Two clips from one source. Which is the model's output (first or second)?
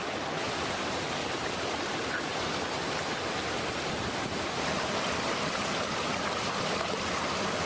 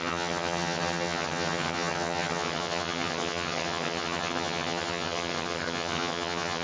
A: second